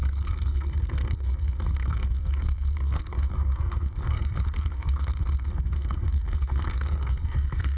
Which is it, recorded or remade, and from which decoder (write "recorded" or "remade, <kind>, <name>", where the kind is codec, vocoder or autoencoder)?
remade, codec, SNAC